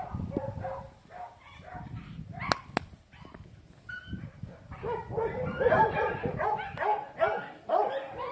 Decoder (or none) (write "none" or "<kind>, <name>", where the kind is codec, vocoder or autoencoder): none